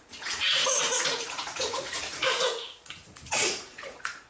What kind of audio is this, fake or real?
fake